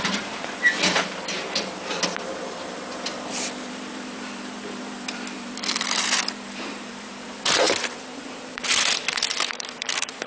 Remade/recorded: remade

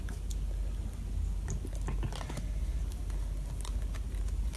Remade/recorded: recorded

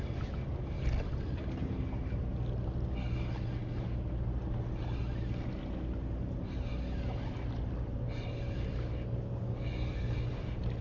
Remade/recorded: recorded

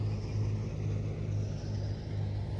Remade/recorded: recorded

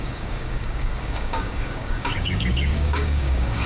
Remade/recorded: remade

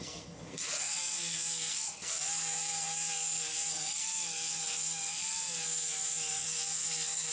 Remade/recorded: remade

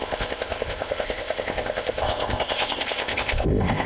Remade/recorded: remade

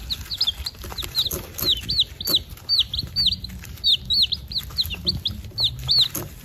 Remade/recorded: recorded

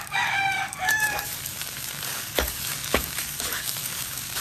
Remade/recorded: remade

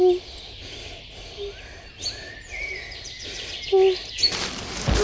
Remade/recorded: recorded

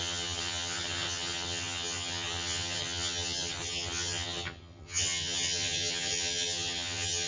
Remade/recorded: remade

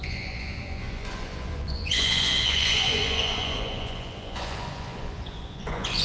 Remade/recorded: remade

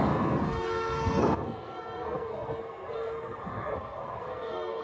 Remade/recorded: remade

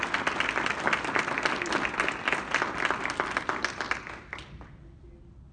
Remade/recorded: recorded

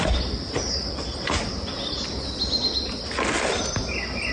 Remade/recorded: recorded